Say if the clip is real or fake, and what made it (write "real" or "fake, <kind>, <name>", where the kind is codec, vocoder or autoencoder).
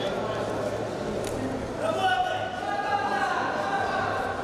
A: real